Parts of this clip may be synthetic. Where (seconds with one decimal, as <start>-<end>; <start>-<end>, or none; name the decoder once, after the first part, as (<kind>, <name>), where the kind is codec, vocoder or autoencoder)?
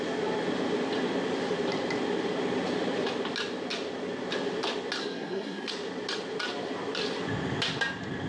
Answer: 5.0-5.7 (codec, SNAC)